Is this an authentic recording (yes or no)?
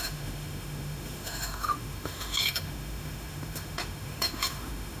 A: no